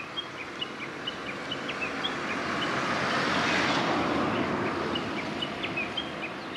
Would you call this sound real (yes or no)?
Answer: yes